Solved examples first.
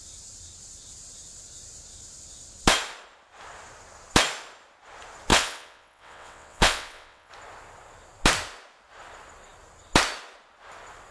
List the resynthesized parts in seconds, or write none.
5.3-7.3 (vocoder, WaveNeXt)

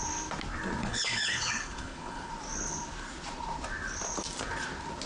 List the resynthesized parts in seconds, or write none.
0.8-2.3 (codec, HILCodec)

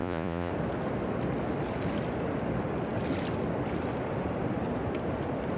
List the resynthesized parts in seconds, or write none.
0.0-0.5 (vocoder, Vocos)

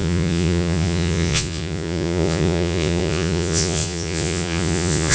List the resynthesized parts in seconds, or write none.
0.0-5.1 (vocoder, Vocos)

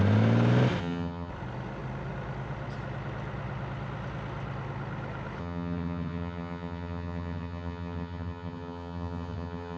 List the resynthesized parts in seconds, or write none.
0.8-1.3 (vocoder, HiFi-GAN); 5.4-9.8

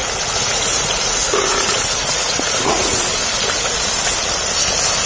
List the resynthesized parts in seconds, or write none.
0.0-3.1 (vocoder, Vocos)

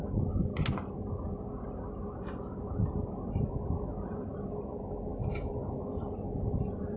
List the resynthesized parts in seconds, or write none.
none

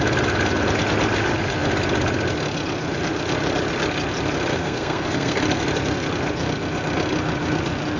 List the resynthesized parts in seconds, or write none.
4.5-5.4 (codec, SNAC)